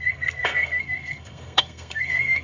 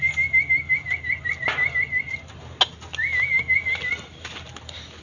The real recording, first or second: second